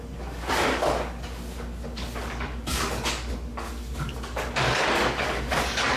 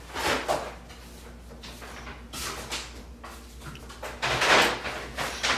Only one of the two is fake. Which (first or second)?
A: first